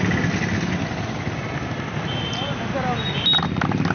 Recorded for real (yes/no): yes